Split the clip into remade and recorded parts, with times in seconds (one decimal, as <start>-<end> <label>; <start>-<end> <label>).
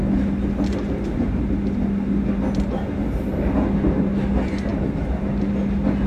0.0-6.1 recorded